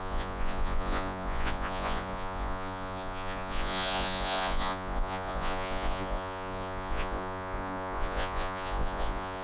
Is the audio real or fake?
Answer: fake